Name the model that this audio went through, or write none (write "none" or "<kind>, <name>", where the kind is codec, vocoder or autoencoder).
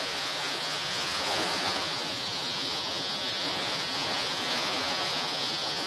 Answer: vocoder, Vocos